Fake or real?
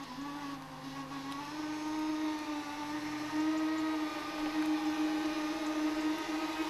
real